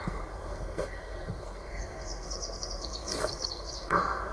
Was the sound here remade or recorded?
remade